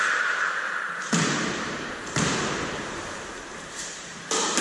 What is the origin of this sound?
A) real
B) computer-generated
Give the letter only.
B